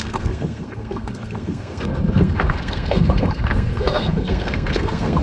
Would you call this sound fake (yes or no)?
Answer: yes